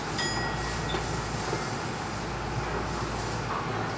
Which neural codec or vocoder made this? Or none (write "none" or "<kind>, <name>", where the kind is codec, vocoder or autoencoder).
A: none